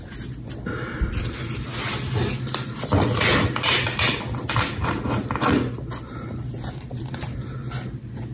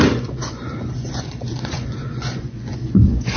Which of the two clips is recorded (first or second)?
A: first